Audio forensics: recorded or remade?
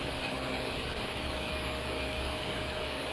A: remade